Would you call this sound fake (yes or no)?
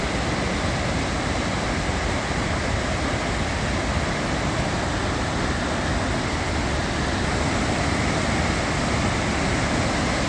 no